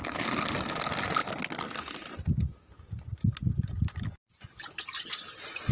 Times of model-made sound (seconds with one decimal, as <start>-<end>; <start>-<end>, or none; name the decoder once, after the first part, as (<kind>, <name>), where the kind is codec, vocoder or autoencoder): none